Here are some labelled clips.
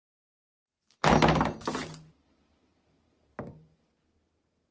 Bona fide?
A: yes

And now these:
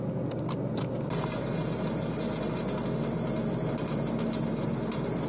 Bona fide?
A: yes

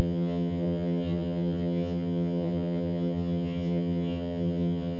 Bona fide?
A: no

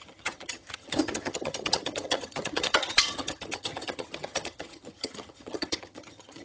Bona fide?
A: no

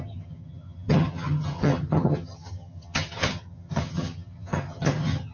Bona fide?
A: no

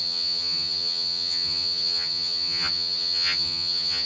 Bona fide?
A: no